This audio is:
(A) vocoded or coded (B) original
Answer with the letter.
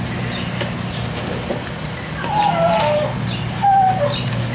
B